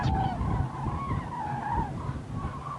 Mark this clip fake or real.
fake